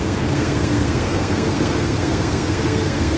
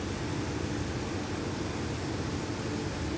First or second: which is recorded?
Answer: second